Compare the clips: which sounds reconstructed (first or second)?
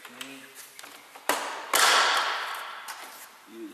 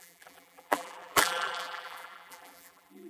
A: second